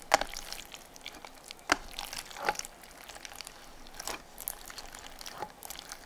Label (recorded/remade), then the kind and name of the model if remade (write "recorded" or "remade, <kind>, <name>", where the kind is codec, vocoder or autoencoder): recorded